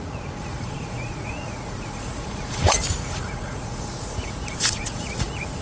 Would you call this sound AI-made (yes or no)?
yes